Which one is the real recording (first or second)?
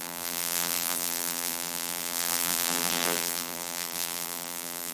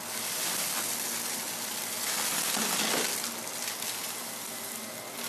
second